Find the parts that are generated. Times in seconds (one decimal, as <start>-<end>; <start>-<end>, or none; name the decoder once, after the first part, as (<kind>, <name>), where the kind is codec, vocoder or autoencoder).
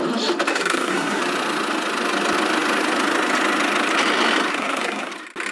0.5-1.2 (codec, SNAC); 4.5-5.1